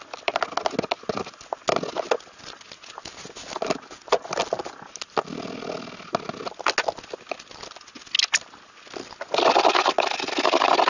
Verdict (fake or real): real